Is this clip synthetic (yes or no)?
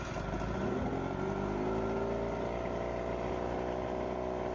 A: no